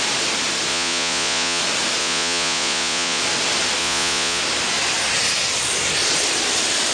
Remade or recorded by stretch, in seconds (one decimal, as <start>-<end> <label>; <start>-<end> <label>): 0.0-0.7 recorded; 0.7-1.6 remade; 1.6-2.0 recorded; 2.0-3.2 remade; 3.2-3.8 recorded; 3.8-4.4 remade; 4.4-6.9 recorded